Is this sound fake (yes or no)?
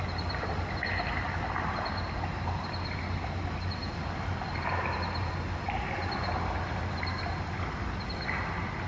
no